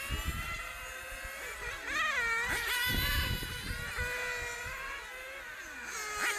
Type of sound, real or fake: real